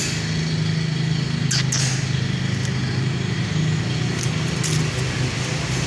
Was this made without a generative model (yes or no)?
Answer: yes